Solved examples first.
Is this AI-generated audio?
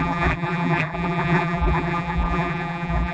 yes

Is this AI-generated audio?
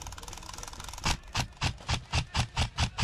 no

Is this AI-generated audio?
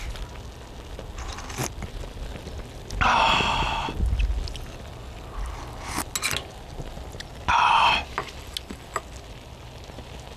no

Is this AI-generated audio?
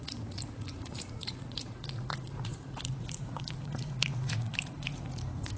yes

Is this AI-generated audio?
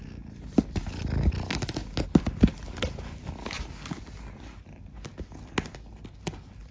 no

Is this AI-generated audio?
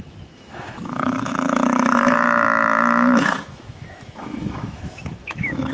yes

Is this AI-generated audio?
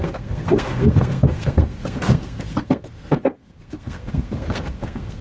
yes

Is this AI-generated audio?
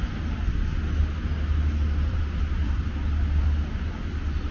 no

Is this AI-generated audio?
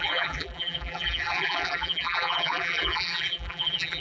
yes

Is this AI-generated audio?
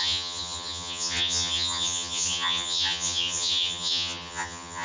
yes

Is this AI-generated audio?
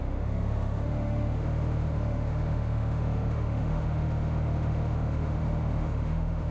yes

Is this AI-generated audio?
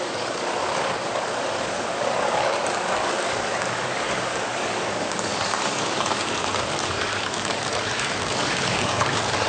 yes